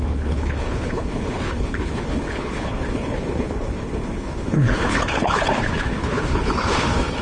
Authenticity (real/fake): fake